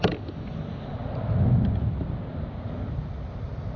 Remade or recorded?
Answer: recorded